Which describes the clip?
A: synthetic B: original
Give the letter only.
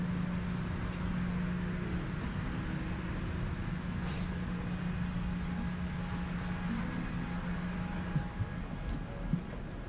B